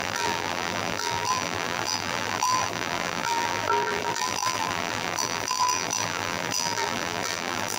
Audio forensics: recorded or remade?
remade